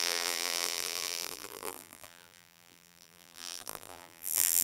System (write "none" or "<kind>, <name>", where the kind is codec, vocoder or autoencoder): vocoder, BigVGAN v2